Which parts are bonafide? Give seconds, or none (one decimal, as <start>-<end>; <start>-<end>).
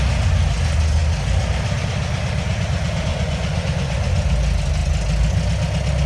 0.0-3.1; 4.1-6.1